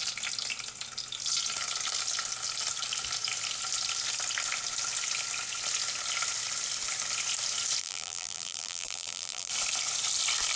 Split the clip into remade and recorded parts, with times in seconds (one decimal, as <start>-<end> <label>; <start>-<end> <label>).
0.0-7.8 recorded; 7.8-9.5 remade; 9.5-10.6 recorded